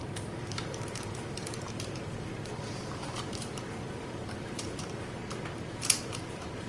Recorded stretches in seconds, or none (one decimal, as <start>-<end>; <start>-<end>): 5.2-5.7